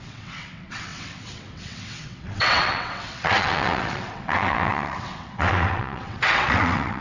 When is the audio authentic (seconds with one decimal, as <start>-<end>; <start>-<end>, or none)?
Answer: none